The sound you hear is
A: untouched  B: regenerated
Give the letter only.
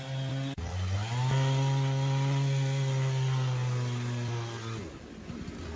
A